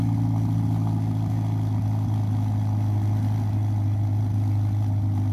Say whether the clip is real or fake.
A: real